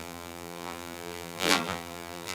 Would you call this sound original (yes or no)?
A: no